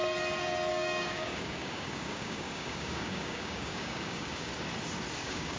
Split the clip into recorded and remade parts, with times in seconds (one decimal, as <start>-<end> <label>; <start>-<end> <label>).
0.0-0.7 recorded; 0.7-4.5 remade; 4.5-5.1 recorded; 5.1-5.6 remade